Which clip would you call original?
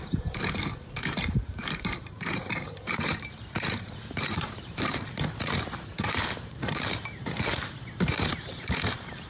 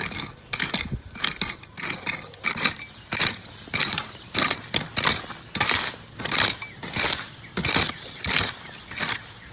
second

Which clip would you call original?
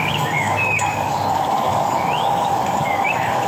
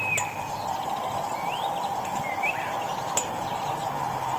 second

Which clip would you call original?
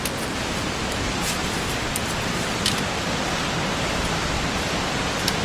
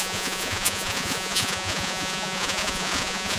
first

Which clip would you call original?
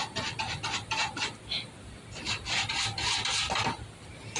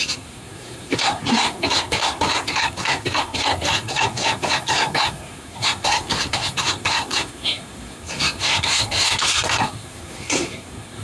first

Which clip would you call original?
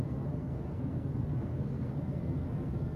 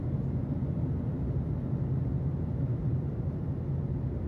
second